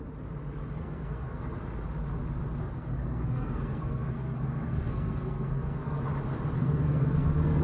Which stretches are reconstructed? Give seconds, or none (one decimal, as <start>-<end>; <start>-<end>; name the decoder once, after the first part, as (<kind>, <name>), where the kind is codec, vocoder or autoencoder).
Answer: 0.6-1.4 (codec, SNAC); 2.6-6.0; 6.6-7.6